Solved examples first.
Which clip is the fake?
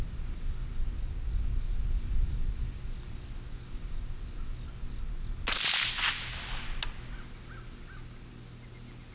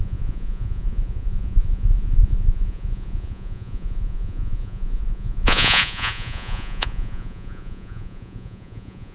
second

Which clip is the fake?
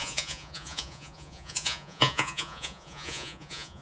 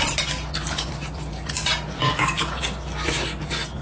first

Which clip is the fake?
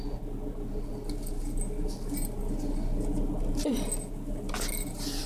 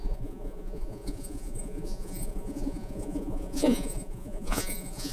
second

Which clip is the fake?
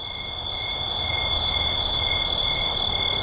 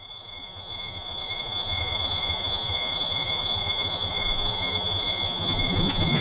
second